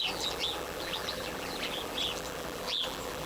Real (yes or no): no